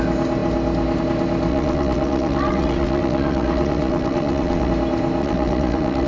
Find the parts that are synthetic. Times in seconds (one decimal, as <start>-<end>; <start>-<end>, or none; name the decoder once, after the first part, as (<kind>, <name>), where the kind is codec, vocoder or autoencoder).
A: 1.5-4.7 (vocoder, WaveNeXt); 5.2-6.1